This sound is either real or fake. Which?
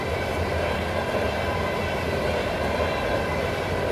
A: real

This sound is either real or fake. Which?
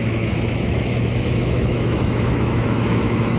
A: fake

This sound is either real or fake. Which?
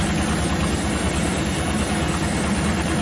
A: real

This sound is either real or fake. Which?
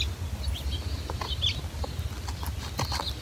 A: real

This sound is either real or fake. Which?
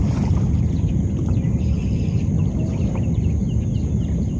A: real